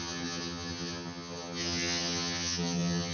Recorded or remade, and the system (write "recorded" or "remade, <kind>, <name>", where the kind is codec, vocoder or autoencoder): remade, vocoder, HiFi-GAN